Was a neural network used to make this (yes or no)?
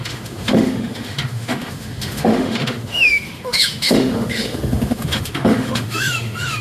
yes